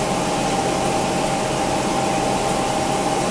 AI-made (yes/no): no